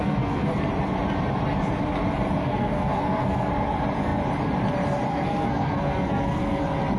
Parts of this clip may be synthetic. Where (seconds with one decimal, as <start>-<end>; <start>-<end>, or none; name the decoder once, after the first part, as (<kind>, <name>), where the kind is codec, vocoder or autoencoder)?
0.0-0.5 (codec, SNAC); 2.4-3.5; 5.1-6.6